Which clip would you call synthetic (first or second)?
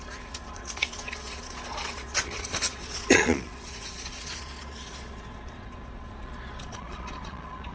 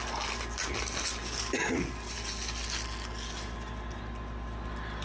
first